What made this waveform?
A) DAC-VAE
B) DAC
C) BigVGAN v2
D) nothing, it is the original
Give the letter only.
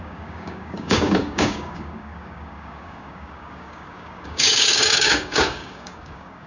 B